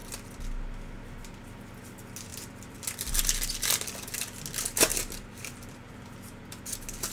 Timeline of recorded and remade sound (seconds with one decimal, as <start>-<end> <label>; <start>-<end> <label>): 0.0-2.3 recorded; 2.3-3.2 remade; 3.2-4.9 recorded; 4.9-6.4 remade; 6.4-7.1 recorded